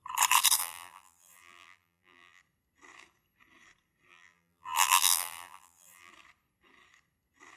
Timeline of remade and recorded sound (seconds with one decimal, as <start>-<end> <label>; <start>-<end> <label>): 0.0-0.6 recorded; 0.6-2.4 remade; 2.4-4.1 recorded; 4.1-6.1 remade; 6.1-7.6 recorded